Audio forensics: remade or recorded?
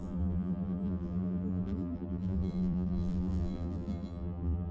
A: remade